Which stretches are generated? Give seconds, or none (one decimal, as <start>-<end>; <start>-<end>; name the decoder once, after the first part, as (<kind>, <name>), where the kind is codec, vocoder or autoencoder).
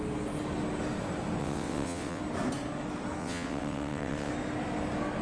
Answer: 1.4-2.2 (vocoder, WaveNeXt); 3.2-4.3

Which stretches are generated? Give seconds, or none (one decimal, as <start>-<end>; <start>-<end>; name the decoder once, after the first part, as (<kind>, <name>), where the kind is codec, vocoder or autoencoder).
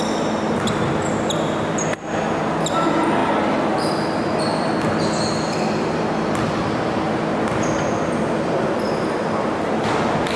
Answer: none